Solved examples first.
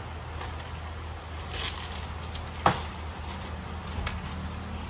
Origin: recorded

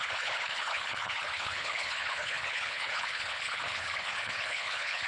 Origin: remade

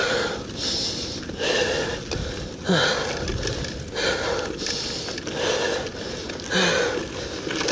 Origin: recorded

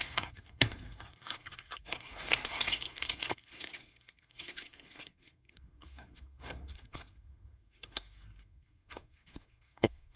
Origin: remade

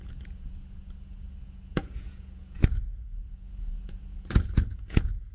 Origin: remade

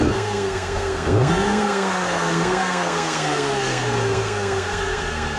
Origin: remade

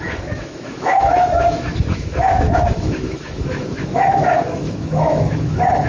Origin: remade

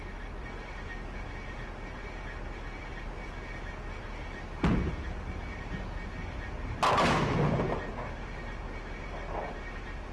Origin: recorded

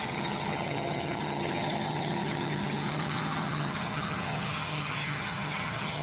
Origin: remade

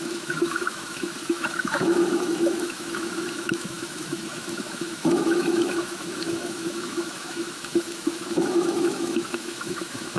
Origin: remade